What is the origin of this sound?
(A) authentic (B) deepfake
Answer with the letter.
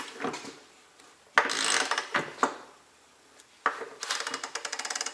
A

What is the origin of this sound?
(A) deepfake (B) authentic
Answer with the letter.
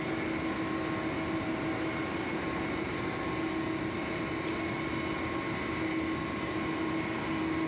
B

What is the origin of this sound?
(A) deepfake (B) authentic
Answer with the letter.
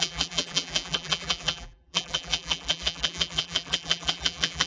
A